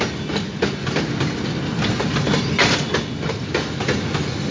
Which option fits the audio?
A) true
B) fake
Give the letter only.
A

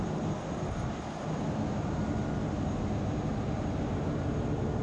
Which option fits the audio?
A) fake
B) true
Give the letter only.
B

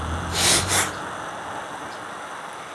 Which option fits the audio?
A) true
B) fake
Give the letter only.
A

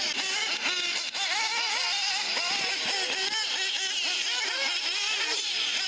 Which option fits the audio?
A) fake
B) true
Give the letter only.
B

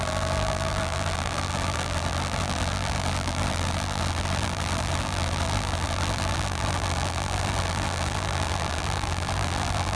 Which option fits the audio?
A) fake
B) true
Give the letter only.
A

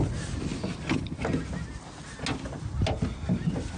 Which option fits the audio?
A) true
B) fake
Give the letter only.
A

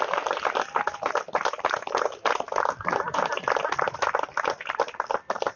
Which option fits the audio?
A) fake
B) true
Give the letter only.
B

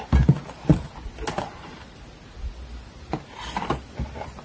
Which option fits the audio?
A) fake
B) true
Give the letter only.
B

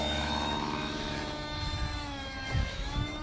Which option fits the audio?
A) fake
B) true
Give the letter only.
A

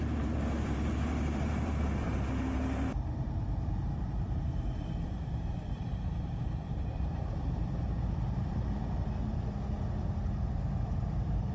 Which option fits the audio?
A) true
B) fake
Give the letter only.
B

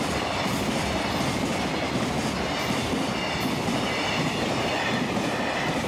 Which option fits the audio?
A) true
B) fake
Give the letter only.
A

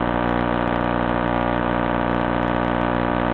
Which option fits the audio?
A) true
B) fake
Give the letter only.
A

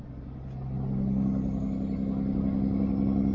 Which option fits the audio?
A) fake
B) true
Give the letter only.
B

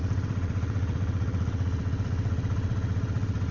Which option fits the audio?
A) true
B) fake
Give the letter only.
B